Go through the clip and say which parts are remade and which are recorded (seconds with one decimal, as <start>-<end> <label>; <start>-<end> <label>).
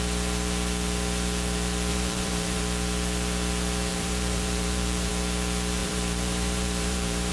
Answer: 0.0-1.9 recorded; 1.9-2.6 remade; 2.6-3.9 recorded; 3.9-5.1 remade; 5.1-5.8 recorded; 5.8-7.3 remade